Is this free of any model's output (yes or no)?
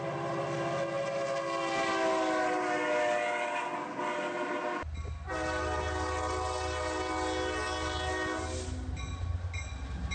yes